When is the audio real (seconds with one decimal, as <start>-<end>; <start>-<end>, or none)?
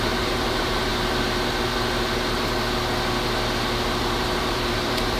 0.9-4.0